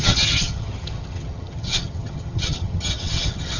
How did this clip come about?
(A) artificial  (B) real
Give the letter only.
A